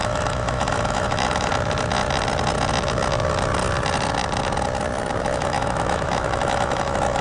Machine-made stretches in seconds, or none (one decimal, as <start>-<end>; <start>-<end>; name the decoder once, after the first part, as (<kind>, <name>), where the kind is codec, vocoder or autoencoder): 0.0-1.5 (autoencoder, DAC-VAE); 5.2-7.2